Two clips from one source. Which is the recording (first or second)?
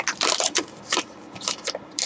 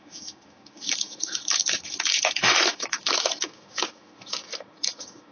first